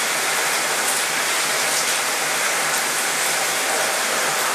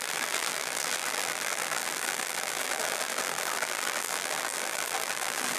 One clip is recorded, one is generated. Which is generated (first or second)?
second